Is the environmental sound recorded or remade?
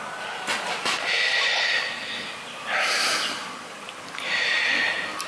recorded